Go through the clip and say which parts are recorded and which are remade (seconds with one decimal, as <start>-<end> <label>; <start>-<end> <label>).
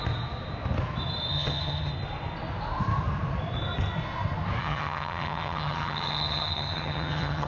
0.0-1.3 recorded; 1.3-1.9 remade; 1.9-4.6 recorded; 4.6-7.5 remade